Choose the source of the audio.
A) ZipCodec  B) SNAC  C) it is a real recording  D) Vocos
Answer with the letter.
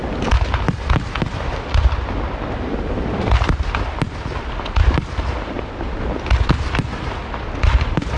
C